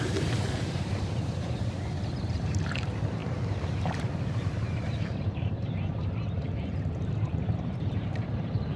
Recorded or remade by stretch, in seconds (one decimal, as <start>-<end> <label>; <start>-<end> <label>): 0.0-8.8 remade